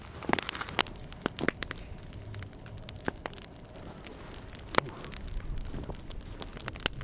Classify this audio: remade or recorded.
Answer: recorded